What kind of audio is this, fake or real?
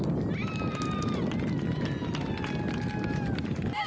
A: real